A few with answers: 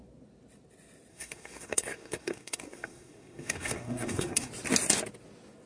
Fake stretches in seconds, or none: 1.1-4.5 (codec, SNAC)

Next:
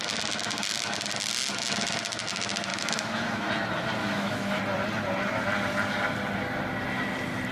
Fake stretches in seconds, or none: 2.7-3.5 (autoencoder, DAC-VAE); 4.0-4.6

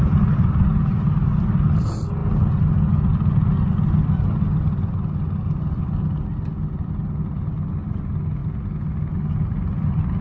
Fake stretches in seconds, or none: none

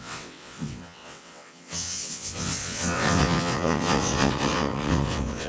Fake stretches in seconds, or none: 0.0-5.5 (vocoder, WaveNeXt)

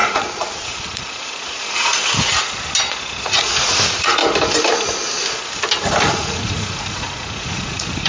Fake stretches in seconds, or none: 0.0-2.0 (vocoder, Vocos); 3.0-4.2; 6.1-8.1

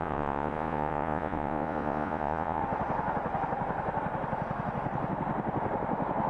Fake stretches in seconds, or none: 0.0-2.6 (vocoder, Vocos)

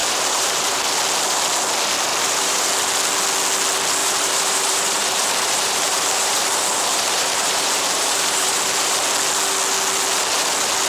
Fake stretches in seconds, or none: 0.0-0.8 (vocoder, BigVGAN v2); 2.1-2.7; 4.0-8.9

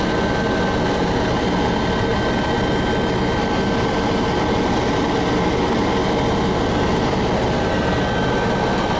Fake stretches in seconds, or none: none